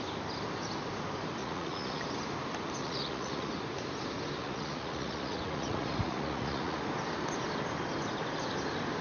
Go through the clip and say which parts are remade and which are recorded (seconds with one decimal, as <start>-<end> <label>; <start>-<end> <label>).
0.0-1.4 recorded; 1.4-2.0 remade; 2.0-2.8 recorded; 2.8-3.5 remade; 3.5-4.4 recorded; 4.4-6.8 remade; 6.8-9.0 recorded